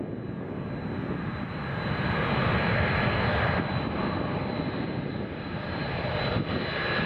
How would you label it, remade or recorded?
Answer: recorded